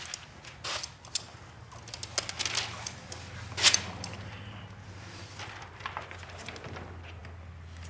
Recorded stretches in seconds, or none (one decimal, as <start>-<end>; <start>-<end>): 0.0-7.9